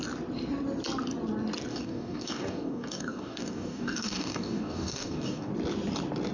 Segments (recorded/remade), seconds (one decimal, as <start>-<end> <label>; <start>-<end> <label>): 0.0-1.7 recorded; 1.7-5.5 remade; 5.5-6.3 recorded